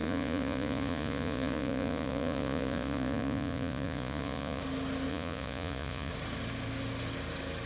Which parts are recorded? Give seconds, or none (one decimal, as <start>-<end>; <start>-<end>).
4.6-5.1; 6.1-7.7